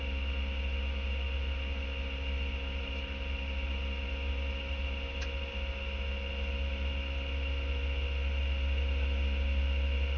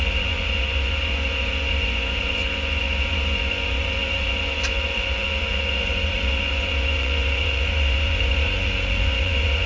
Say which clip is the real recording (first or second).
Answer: first